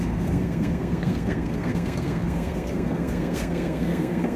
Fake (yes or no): yes